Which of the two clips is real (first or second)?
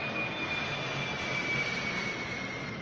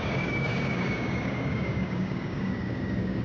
first